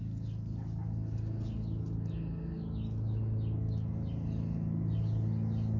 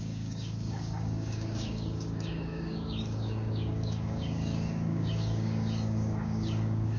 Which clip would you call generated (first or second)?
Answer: second